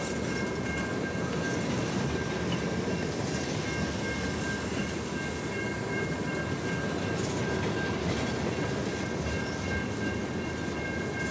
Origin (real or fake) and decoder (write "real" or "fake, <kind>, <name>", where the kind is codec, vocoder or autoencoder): real